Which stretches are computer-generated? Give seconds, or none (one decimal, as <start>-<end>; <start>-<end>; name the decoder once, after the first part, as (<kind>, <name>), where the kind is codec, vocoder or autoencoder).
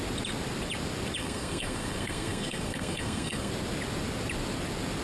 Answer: 1.2-3.5 (codec, SNAC)